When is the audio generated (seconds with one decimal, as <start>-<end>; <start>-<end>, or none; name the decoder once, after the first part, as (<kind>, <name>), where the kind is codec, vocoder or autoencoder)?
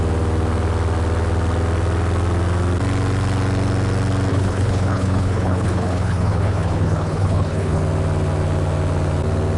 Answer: 4.3-7.8 (codec, HILCodec)